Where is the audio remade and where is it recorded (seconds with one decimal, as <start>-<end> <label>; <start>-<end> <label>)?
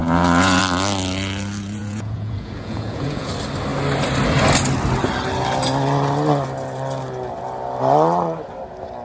0.0-0.6 remade; 0.6-1.8 recorded; 1.8-3.3 remade; 3.3-9.0 recorded